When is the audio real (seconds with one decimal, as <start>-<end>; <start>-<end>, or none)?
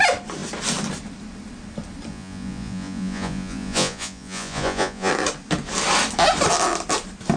0.0-2.1; 5.1-7.4